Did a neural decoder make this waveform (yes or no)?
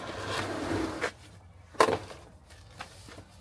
no